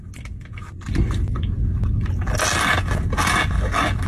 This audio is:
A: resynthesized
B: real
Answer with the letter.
B